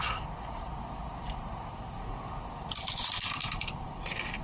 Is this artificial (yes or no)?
no